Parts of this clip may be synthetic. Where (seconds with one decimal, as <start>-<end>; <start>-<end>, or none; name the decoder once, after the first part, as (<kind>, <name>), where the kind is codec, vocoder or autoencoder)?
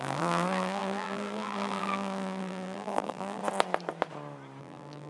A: 0.0-3.4 (vocoder, BigVGAN v2); 4.6-5.1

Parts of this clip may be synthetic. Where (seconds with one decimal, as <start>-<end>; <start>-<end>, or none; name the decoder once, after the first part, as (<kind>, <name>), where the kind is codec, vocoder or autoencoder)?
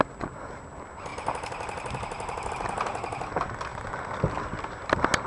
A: none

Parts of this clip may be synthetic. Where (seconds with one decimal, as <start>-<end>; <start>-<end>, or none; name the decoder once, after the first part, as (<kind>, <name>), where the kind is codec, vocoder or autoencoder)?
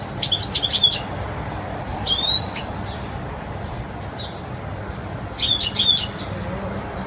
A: 1.9-2.6 (vocoder, BigVGAN v2)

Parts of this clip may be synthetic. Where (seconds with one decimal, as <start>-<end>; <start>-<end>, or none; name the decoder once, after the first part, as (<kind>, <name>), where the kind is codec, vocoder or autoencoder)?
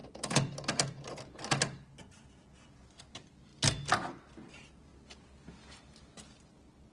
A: none